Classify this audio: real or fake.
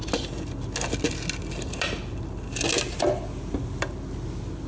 real